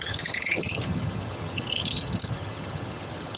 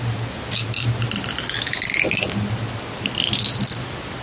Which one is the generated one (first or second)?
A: first